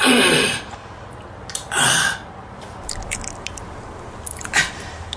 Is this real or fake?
real